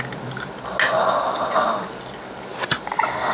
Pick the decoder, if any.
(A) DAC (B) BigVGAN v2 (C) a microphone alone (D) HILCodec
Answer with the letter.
C